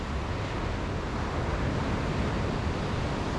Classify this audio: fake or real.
real